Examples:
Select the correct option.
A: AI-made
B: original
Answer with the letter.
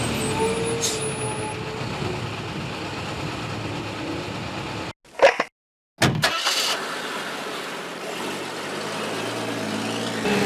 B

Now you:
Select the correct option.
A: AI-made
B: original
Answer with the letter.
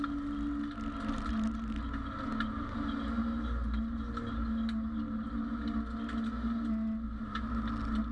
B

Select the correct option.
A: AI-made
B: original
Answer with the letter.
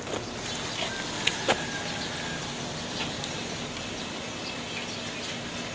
B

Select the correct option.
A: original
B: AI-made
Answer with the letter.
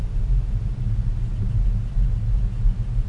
A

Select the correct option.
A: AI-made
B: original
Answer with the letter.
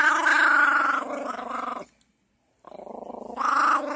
B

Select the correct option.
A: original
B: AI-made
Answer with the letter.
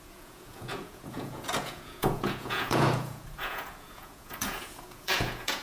B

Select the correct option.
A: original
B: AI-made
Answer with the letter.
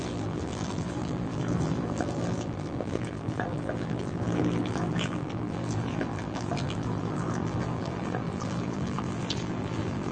B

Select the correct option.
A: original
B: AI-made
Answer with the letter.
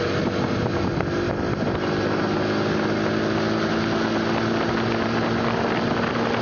A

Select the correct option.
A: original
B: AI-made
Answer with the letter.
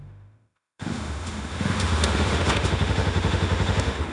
B